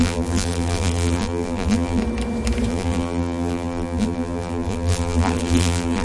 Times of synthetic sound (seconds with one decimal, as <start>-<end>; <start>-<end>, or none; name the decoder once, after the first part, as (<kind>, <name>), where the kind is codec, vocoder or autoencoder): 0.0-2.0 (vocoder, BigVGAN v2); 2.7-6.0